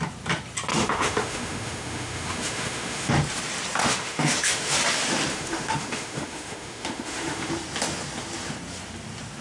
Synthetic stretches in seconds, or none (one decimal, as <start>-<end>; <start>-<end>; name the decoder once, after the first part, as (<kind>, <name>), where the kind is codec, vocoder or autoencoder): 0.7-3.1 (autoencoder, DAC-VAE); 3.8-4.7; 5.3-7.5